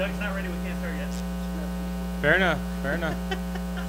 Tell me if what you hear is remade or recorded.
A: recorded